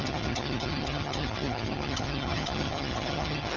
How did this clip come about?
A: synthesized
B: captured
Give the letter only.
A